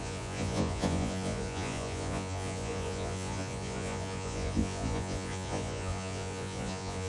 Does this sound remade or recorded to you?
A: remade